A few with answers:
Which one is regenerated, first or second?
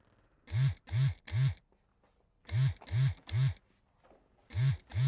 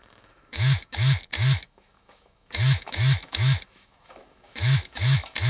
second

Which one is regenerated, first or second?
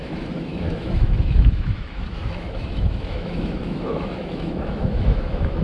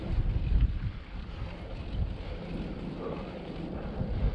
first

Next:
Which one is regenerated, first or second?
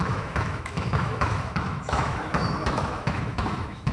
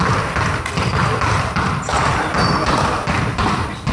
first